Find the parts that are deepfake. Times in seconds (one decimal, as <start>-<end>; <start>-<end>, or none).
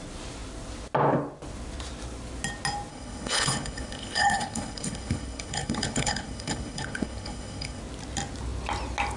2.9-7.8